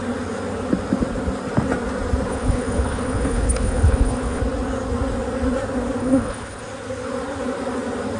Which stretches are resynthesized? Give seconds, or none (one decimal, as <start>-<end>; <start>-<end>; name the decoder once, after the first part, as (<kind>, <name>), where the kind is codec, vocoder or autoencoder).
2.3-4.4 (codec, HILCodec); 6.0-6.6